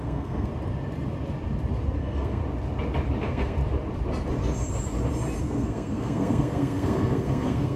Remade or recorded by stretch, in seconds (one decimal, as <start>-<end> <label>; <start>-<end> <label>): 0.0-0.5 remade; 0.5-2.0 recorded; 2.0-2.4 remade; 2.4-3.2 recorded; 3.2-3.6 remade; 3.6-5.4 recorded; 5.4-7.8 remade